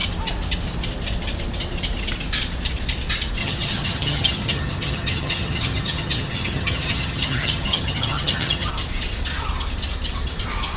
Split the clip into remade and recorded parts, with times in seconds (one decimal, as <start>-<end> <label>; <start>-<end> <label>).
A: 0.0-3.4 recorded; 3.4-8.7 remade; 8.7-10.8 recorded